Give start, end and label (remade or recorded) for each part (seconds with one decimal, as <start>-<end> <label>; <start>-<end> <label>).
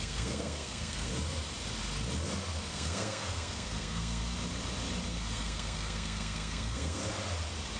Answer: 0.0-1.1 remade; 1.1-2.7 recorded; 2.7-4.2 remade; 4.2-5.1 recorded; 5.1-7.0 remade; 7.0-7.8 recorded